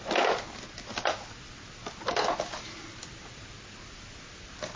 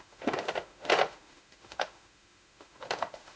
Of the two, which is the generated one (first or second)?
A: second